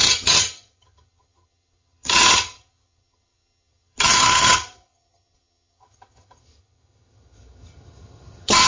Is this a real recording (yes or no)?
no